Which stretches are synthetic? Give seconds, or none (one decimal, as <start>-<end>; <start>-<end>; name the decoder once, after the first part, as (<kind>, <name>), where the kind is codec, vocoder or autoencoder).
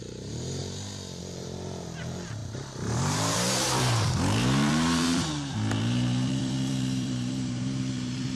0.0-0.6 (vocoder, BigVGAN v2); 1.2-8.3